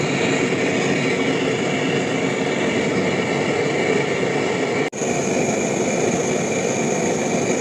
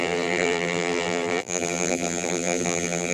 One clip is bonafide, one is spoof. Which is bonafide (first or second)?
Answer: first